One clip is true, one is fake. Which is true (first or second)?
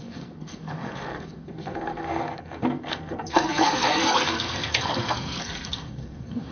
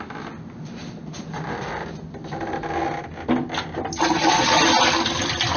second